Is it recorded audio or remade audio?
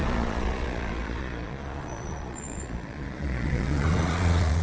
remade